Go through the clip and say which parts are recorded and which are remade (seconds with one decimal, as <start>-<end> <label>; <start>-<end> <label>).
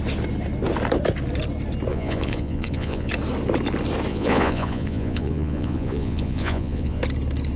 0.0-1.9 recorded; 1.9-3.1 remade; 3.1-4.1 recorded; 4.1-7.0 remade; 7.0-7.6 recorded